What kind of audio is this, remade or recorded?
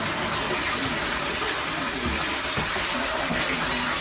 recorded